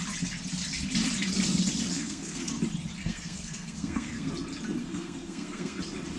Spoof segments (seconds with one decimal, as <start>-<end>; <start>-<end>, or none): 1.9-2.5; 3.0-4.3; 4.8-5.8